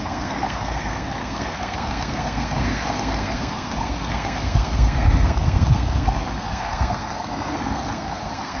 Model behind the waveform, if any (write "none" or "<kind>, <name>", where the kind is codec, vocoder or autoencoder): codec, SNAC